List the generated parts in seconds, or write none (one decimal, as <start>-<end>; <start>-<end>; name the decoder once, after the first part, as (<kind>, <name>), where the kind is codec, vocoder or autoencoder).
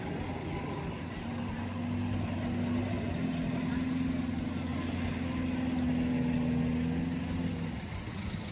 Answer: none